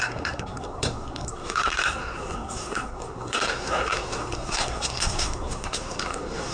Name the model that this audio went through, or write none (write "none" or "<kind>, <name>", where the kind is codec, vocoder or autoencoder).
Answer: codec, SNAC